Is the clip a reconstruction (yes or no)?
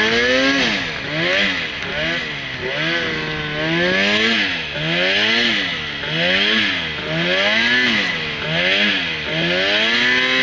no